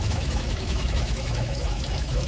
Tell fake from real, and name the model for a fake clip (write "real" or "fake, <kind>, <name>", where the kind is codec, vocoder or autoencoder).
fake, autoencoder, DAC-VAE